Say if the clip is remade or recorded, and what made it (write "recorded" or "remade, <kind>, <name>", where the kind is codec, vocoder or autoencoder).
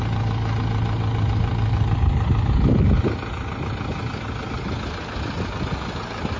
recorded